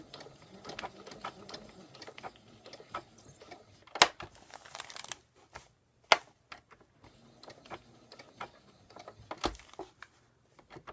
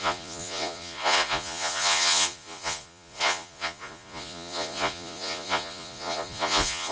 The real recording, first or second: first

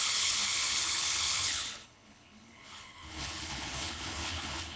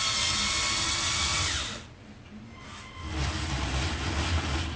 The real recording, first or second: second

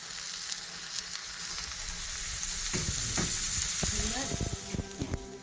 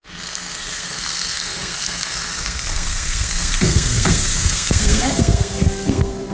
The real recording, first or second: first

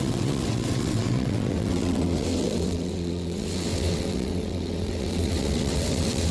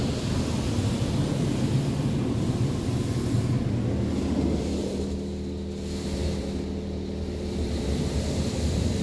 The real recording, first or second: second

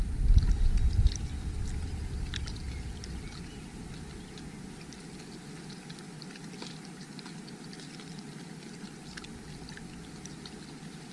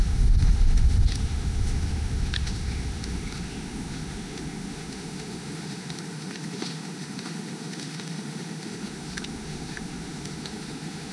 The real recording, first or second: first